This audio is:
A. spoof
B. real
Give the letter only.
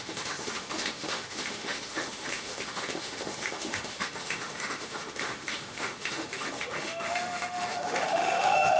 A